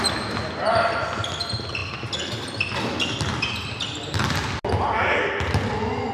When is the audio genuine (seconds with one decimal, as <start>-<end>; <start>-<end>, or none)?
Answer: 0.0-6.1